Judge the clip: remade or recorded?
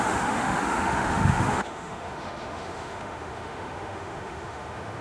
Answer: remade